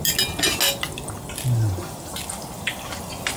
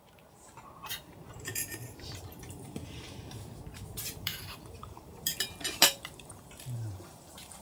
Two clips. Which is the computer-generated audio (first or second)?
second